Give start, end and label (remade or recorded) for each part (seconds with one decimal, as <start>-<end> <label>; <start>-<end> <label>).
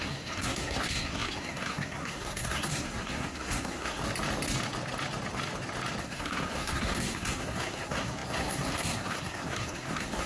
0.0-4.0 remade; 4.0-6.0 recorded; 6.0-10.3 remade